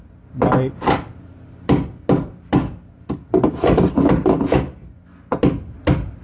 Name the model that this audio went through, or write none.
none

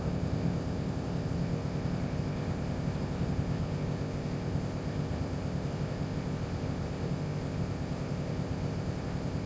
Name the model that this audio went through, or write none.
codec, ZipCodec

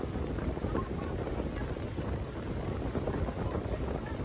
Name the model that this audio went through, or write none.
none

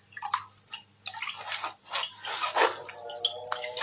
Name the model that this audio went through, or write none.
none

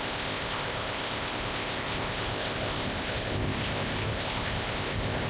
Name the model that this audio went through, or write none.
codec, ZipCodec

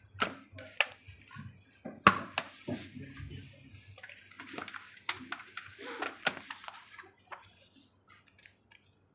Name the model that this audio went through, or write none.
none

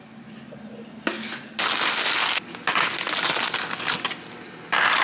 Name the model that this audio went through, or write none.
none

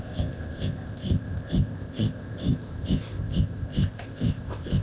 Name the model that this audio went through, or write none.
codec, ZipCodec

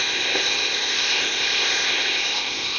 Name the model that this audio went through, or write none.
codec, ZipCodec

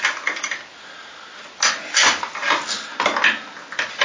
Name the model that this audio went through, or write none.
none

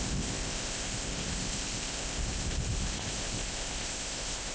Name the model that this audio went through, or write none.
codec, ZipCodec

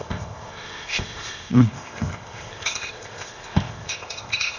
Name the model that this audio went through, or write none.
codec, ZipCodec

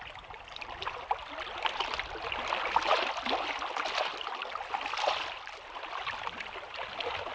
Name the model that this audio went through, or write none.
none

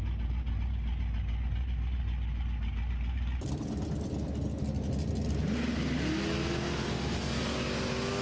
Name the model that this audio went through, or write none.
none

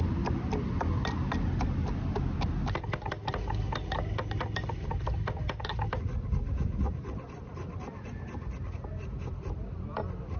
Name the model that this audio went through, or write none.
none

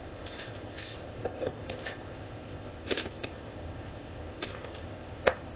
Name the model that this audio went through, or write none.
codec, ZipCodec